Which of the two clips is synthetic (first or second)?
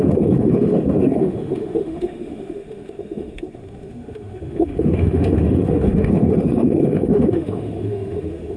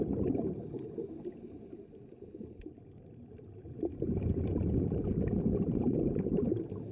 first